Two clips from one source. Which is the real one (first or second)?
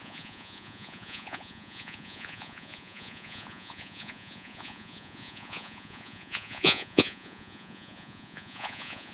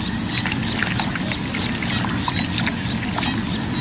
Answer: second